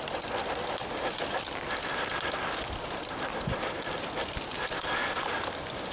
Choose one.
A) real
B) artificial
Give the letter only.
B